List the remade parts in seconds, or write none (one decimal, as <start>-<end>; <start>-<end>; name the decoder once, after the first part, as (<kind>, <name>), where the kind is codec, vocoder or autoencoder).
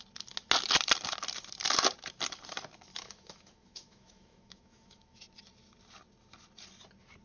2.9-5.2 (autoencoder, DAC-VAE)